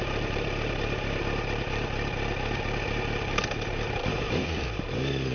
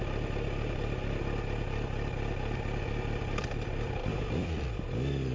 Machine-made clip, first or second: first